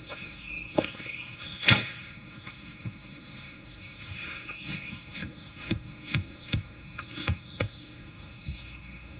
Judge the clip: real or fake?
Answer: fake